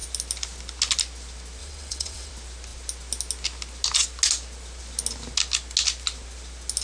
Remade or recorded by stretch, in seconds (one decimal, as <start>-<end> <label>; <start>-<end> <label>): 0.0-1.6 recorded; 1.6-2.3 remade; 2.3-6.8 recorded